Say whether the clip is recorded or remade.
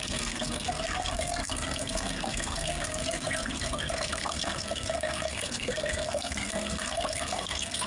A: remade